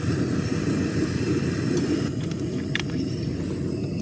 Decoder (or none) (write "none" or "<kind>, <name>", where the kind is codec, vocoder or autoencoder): none